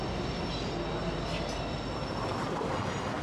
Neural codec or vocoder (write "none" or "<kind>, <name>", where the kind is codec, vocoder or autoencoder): none